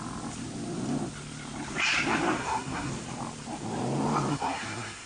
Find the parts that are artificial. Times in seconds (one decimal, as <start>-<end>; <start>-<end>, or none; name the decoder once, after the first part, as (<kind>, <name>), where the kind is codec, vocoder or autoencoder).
2.4-2.9 (codec, SNAC); 4.3-5.1